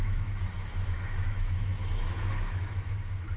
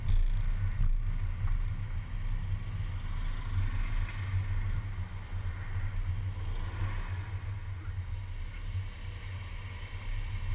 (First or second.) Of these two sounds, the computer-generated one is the first